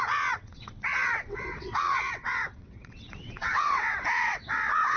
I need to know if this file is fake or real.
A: fake